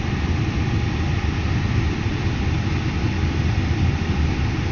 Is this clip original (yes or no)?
yes